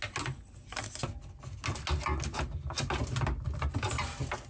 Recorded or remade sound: recorded